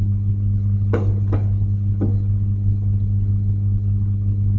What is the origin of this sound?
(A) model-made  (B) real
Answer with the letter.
A